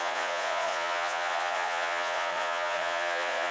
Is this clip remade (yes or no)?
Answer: yes